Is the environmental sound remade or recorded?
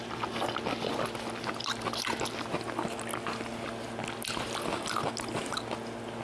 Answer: recorded